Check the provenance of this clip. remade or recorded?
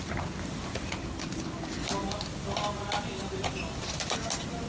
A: recorded